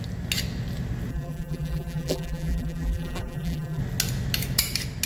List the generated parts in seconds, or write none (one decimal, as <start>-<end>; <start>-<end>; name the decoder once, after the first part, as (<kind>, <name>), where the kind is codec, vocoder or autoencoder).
1.1-3.8 (vocoder, BigVGAN v2)